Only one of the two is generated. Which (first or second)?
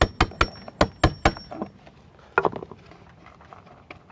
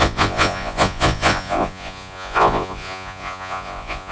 second